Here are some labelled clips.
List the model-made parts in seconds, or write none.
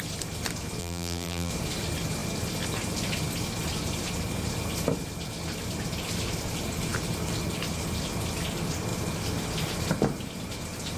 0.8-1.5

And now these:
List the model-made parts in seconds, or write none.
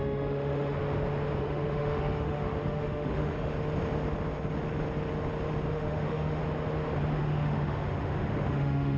0.0-0.8; 1.4-3.5; 5.7-6.4; 7.2-9.0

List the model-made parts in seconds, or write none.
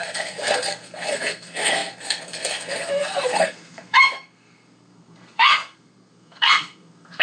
0.0-7.2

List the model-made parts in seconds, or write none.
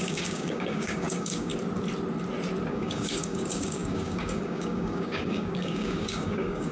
0.0-1.5; 2.7-6.7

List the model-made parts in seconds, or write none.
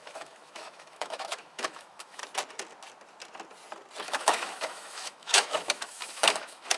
0.0-2.2; 4.0-6.8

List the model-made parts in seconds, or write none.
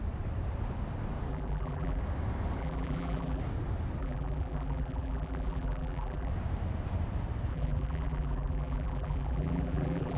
1.3-2.0; 2.6-3.4; 4.0-6.3; 7.5-10.2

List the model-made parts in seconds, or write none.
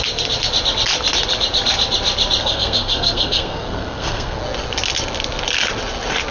2.4-4.4